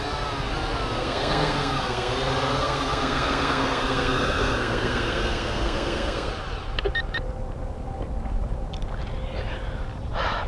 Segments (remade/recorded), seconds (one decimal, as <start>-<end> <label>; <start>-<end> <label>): 0.0-1.0 recorded; 1.0-2.1 remade; 2.1-2.6 recorded; 2.6-6.3 remade; 6.3-10.5 recorded